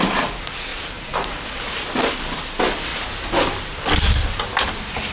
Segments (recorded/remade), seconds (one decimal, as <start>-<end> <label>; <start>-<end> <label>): 0.0-5.1 recorded